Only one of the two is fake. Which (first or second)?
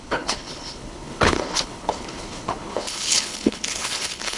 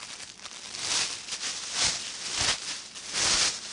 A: first